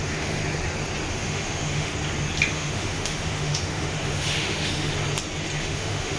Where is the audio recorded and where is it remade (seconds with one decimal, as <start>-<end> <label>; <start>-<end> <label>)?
0.0-0.4 remade; 0.4-1.1 recorded; 1.1-1.9 remade; 1.9-2.5 recorded; 2.5-4.9 remade; 4.9-5.6 recorded; 5.6-6.2 remade

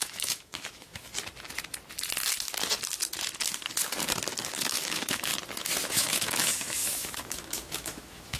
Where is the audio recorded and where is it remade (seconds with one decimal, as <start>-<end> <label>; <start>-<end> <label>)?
0.0-1.1 remade; 1.1-4.4 recorded; 4.4-5.3 remade; 5.3-5.9 recorded; 5.9-8.4 remade